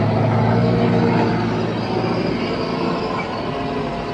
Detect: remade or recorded recorded